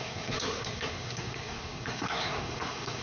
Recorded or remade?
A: remade